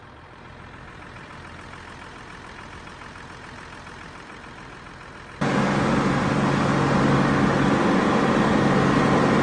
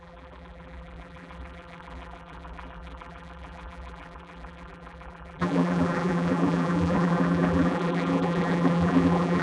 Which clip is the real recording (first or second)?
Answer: first